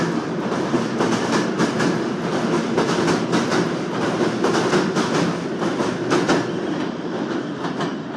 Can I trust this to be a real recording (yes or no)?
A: yes